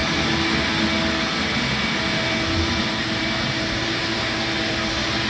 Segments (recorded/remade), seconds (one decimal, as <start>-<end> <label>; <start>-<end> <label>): 0.0-2.6 recorded; 2.6-5.3 remade